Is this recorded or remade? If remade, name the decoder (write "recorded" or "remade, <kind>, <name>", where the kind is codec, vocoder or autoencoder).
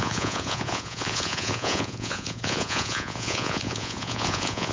remade, vocoder, Vocos